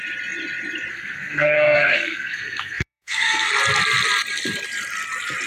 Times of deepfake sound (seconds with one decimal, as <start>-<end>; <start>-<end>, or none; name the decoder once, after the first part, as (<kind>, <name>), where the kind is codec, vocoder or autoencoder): 0.9-3.5 (codec, SNAC)